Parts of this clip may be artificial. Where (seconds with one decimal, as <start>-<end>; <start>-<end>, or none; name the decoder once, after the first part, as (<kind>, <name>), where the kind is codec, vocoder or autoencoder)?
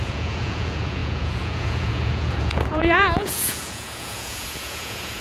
0.0-5.2 (vocoder, Vocos)